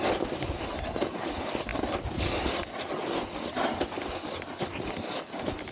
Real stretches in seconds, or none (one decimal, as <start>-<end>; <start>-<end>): 0.0-5.7